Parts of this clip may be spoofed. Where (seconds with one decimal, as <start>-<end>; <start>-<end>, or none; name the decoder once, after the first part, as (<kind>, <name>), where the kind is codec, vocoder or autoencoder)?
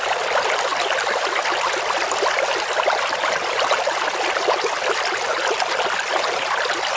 none